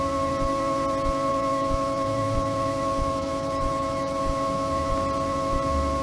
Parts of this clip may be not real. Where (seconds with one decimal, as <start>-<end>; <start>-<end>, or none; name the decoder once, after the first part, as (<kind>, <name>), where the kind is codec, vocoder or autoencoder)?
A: 1.3-4.9 (autoencoder, DAC-VAE)